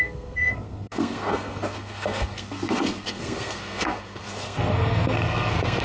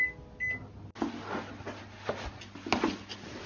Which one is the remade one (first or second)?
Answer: first